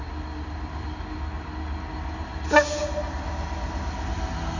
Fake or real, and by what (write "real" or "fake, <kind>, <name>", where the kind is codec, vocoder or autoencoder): real